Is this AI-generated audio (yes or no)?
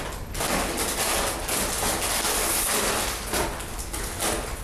no